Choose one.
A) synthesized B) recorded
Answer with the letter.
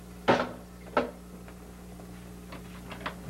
B